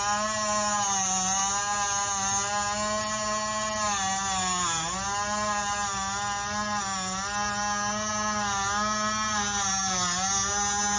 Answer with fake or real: real